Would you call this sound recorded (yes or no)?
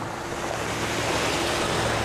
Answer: yes